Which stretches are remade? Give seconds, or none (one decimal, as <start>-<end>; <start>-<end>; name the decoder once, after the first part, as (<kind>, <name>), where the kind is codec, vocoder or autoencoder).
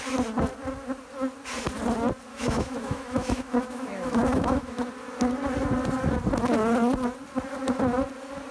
2.3-4.8 (autoencoder, DAC-VAE)